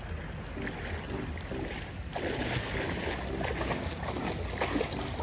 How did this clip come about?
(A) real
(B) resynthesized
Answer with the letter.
A